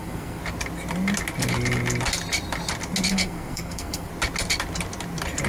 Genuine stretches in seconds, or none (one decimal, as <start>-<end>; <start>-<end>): 0.4-3.1; 4.1-5.5